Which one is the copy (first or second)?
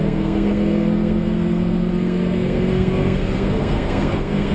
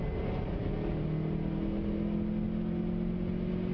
first